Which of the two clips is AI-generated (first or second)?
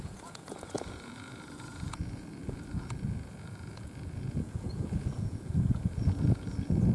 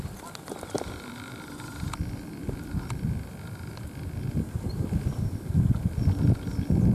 first